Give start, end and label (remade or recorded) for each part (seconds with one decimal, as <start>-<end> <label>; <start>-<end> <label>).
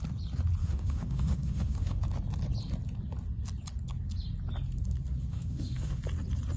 0.0-0.6 recorded; 0.6-2.0 remade; 2.0-5.3 recorded; 5.3-6.0 remade; 6.0-6.6 recorded